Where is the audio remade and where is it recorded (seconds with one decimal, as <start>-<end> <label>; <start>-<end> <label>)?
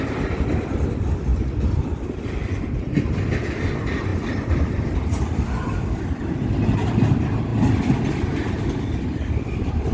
0.0-4.1 recorded; 4.1-6.3 remade; 6.3-9.9 recorded